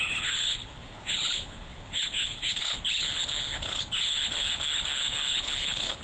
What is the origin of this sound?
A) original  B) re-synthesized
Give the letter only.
B